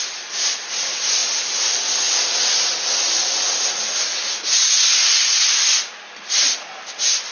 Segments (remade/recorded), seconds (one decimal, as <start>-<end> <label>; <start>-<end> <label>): 0.0-7.3 recorded